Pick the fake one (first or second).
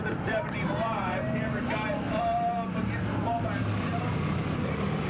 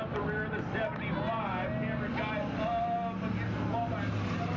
first